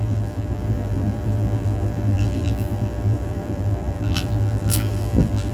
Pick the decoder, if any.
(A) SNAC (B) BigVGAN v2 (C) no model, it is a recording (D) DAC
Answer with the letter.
B